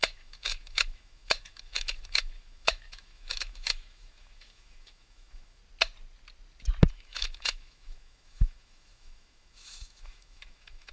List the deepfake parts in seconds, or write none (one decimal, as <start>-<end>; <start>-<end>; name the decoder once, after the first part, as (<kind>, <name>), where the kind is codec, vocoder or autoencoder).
0.0-5.6 (autoencoder, DAC-VAE); 6.9-10.9